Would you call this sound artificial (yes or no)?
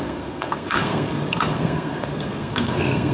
yes